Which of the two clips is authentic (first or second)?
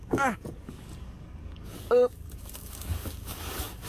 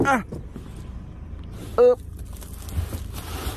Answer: second